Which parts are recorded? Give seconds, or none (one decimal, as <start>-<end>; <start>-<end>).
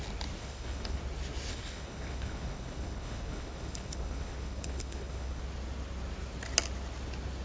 0.0-0.4; 1.0-1.5; 5.4-7.4